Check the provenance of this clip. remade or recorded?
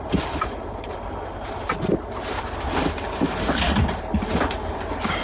recorded